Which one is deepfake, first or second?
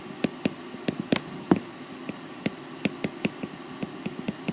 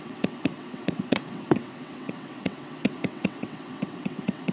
second